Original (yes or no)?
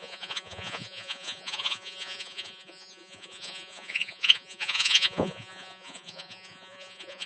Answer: no